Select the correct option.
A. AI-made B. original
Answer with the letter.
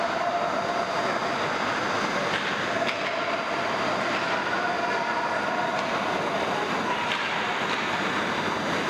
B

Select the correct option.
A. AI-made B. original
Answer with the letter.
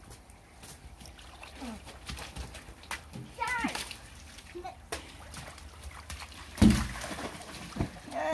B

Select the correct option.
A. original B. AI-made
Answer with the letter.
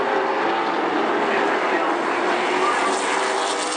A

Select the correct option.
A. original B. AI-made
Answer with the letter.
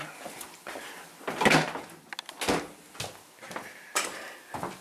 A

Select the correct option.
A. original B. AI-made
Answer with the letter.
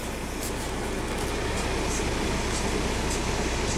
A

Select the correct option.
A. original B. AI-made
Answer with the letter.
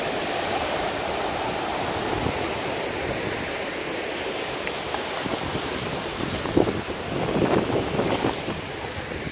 A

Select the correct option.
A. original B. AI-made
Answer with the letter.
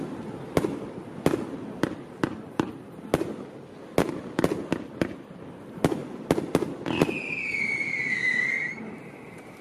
A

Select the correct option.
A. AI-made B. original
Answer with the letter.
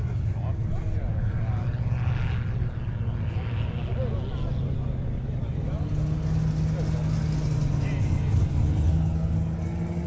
B